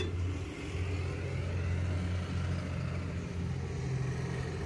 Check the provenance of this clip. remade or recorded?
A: recorded